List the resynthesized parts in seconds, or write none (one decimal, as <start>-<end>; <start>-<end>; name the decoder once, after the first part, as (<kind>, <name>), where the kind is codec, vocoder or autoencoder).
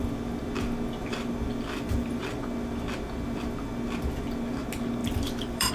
1.5-2.2 (vocoder, BigVGAN v2); 5.0-5.7